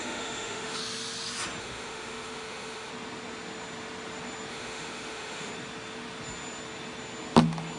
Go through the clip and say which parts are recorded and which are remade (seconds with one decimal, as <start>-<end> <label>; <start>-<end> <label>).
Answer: 0.0-0.8 remade; 0.8-1.6 recorded; 1.6-2.9 remade; 2.9-4.5 recorded; 4.5-5.5 remade; 5.5-7.8 recorded